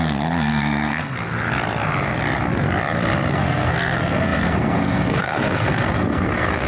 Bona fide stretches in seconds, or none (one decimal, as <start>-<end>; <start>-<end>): 1.2-3.3

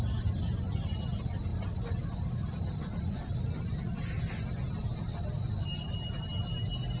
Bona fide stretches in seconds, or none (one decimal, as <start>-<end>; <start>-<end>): 0.0-7.0

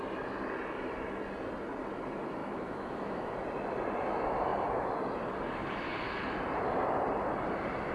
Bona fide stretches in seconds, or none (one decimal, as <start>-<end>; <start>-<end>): 0.0-2.4; 3.3-7.9

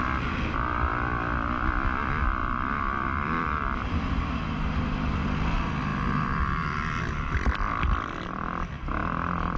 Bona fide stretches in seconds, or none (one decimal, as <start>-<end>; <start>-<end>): 0.0-2.4; 4.2-5.9; 8.3-9.6

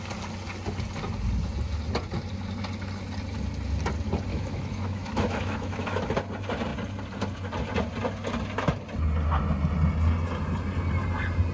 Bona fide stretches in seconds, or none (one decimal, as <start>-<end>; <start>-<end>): 0.0-4.3; 6.1-11.5

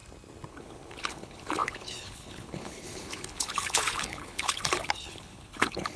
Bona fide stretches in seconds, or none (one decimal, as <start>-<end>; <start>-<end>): 0.0-0.5

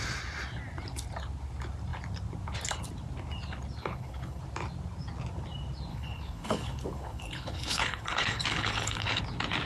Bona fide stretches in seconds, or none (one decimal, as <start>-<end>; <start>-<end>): 0.0-3.8; 4.4-5.9; 9.2-9.7